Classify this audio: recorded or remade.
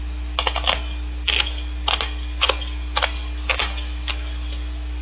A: recorded